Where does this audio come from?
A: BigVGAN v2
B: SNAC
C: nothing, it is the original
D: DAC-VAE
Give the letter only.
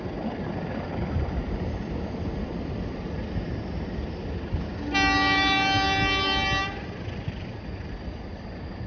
C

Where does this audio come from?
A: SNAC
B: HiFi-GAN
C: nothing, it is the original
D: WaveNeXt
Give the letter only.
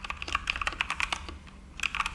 C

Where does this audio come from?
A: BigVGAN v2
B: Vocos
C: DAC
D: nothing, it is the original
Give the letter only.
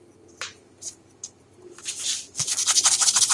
D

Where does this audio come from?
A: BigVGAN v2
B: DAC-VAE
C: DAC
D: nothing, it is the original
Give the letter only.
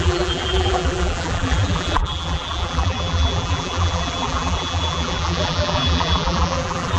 A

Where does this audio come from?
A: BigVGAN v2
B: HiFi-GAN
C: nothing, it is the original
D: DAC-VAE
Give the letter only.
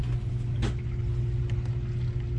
C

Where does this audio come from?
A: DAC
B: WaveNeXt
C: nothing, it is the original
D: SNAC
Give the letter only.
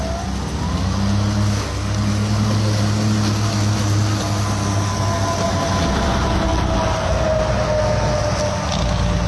C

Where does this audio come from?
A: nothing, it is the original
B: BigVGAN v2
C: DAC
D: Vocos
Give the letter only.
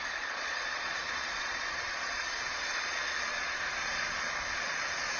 D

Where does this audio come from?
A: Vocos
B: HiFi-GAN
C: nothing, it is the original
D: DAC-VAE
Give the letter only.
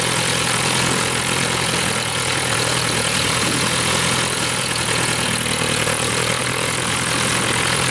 A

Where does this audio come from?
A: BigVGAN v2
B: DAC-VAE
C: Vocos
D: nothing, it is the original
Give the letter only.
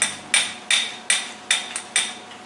D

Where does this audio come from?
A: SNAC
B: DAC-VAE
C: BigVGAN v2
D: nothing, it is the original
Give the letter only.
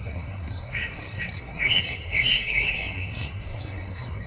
A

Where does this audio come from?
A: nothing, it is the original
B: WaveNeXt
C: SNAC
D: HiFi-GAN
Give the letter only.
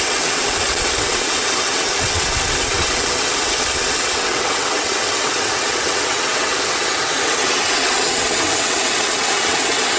B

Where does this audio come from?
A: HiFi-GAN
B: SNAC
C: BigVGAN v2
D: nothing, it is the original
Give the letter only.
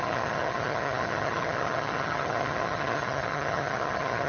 A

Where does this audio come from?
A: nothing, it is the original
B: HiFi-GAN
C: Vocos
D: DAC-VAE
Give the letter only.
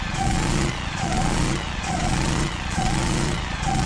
C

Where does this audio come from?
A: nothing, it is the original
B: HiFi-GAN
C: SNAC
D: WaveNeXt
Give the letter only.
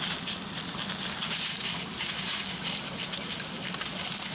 A